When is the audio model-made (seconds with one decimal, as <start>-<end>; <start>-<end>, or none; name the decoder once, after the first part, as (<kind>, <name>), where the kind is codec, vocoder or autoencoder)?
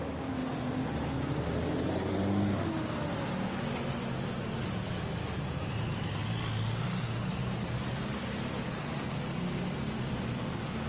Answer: none